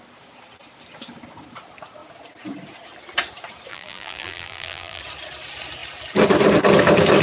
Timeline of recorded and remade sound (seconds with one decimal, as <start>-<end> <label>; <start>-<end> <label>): 0.0-3.7 recorded; 3.7-5.0 remade; 5.0-7.2 recorded